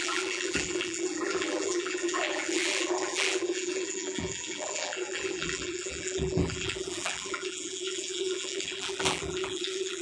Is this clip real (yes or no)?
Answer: no